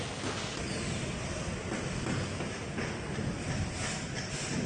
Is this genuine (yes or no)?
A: yes